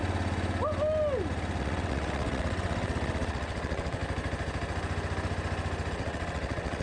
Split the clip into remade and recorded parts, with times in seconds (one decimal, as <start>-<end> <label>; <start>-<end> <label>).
0.0-1.6 recorded; 1.6-4.0 remade; 4.0-5.9 recorded; 5.9-6.8 remade